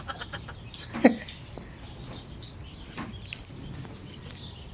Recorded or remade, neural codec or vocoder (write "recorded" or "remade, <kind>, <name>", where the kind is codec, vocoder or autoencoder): recorded